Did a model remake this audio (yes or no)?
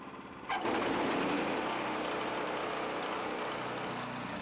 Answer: no